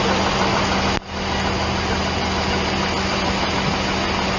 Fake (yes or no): no